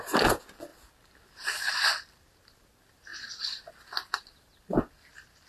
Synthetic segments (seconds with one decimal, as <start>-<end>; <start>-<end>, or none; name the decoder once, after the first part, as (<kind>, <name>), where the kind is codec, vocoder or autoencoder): none